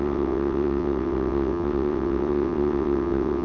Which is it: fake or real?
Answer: fake